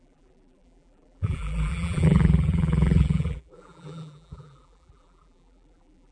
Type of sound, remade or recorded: remade